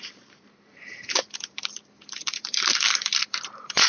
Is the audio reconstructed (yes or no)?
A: yes